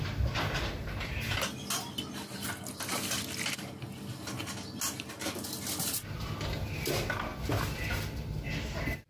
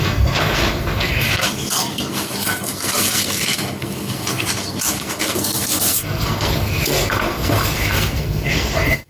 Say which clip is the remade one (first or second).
second